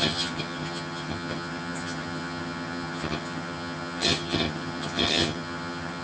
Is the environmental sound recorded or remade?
remade